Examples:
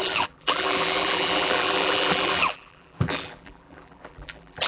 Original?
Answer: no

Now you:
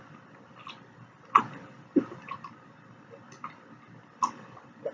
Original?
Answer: no